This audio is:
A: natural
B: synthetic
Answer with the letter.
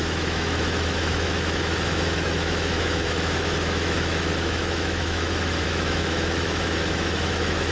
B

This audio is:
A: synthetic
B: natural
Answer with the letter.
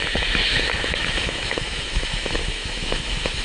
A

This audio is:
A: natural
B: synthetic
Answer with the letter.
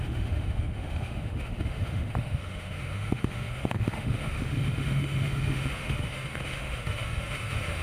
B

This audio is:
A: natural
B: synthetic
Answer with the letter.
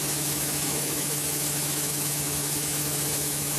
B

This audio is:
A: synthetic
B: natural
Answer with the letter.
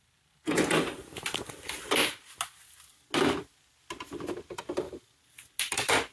B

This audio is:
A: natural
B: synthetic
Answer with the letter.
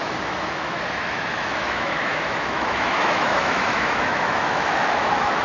B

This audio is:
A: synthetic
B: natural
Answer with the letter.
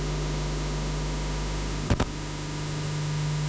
A